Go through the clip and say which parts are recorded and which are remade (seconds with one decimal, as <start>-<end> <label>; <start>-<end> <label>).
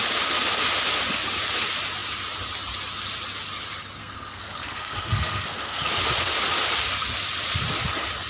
0.0-4.0 recorded; 4.0-5.9 remade; 5.9-8.3 recorded